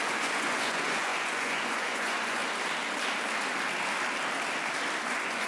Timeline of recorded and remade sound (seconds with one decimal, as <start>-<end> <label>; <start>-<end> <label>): 0.0-2.4 remade; 2.4-5.0 recorded; 5.0-5.5 remade